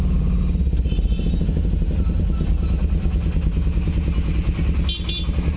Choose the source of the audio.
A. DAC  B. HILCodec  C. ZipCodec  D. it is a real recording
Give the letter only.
D